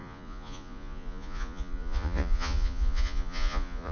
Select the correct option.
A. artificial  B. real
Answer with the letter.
A